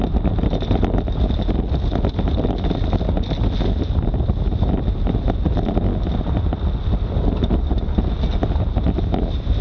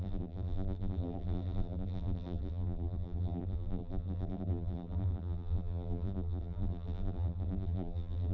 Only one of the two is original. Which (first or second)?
first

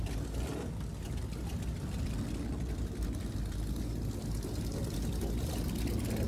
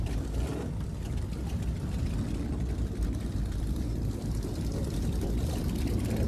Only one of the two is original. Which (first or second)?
first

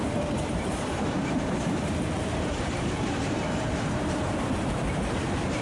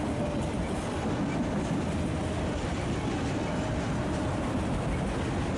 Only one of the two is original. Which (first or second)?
second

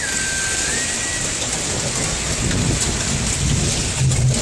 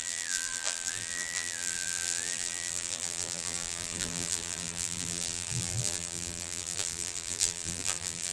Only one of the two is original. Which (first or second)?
first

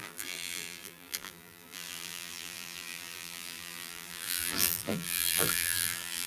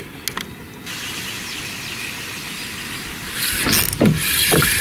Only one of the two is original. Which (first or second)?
second